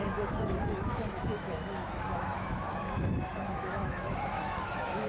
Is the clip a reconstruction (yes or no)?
yes